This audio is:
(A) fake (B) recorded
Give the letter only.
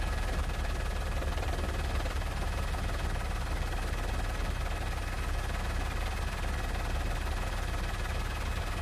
B